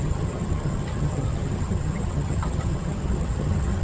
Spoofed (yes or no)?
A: yes